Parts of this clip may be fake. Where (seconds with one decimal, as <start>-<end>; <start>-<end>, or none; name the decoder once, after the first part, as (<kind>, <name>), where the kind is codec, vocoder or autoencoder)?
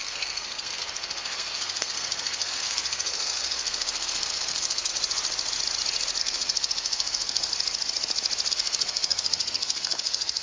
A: 0.0-4.9 (codec, SNAC); 6.2-7.5; 8.5-10.4